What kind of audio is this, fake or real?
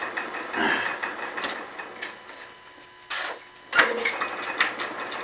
real